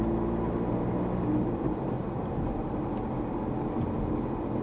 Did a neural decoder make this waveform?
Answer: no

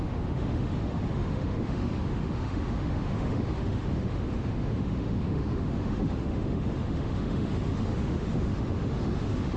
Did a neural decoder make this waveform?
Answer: yes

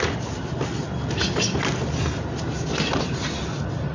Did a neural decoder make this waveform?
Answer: no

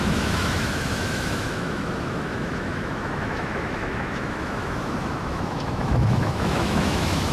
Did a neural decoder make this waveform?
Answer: yes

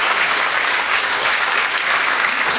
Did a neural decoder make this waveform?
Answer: yes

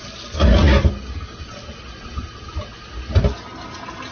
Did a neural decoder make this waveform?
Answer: no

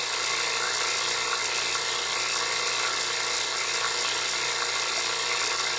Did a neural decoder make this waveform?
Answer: no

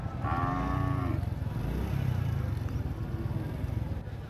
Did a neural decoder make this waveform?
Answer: no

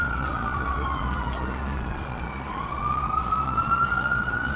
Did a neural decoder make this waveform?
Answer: yes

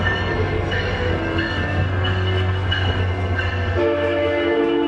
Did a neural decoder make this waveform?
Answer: yes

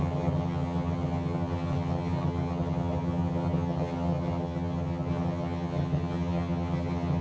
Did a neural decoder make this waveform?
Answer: yes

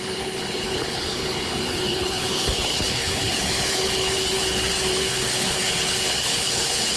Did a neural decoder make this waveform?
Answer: yes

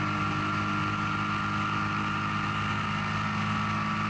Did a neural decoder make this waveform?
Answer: no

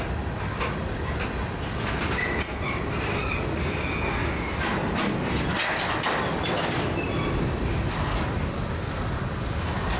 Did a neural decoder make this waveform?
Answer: no